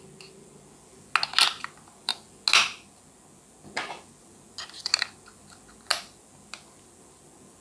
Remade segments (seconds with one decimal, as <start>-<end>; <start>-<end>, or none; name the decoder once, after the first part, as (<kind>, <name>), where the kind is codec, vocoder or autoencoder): none